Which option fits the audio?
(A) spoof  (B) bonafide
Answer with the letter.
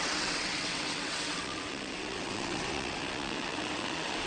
A